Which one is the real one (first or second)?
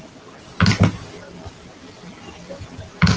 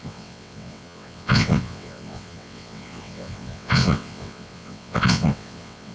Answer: first